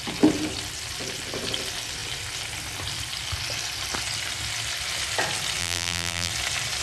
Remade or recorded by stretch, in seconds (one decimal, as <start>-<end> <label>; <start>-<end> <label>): 0.0-5.6 recorded; 5.6-6.3 remade; 6.3-6.8 recorded